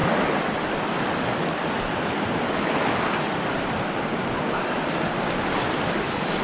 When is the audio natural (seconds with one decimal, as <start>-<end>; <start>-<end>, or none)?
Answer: 0.0-3.4